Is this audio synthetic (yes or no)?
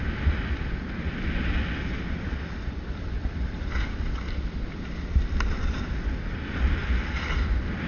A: no